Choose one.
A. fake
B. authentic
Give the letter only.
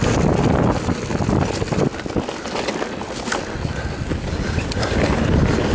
B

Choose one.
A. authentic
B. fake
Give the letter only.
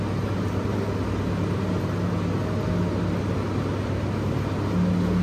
A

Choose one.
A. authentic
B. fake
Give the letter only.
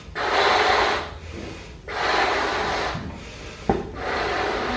A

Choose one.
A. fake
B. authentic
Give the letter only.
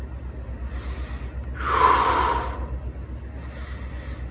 B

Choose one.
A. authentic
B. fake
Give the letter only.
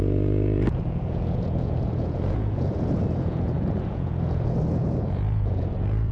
B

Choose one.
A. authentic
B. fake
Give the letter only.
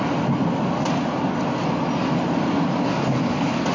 A